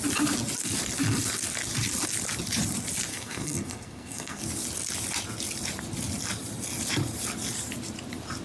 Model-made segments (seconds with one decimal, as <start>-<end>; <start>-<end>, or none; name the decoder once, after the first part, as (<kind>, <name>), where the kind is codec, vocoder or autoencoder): 3.1-4.4 (codec, SNAC)